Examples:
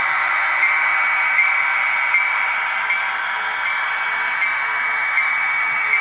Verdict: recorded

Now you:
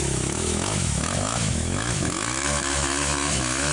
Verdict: remade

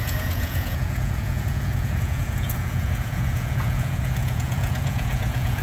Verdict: remade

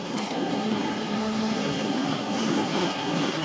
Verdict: remade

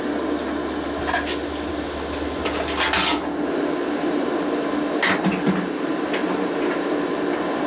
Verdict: recorded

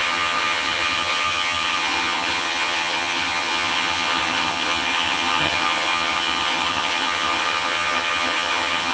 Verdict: remade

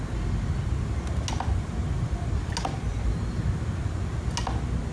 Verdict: recorded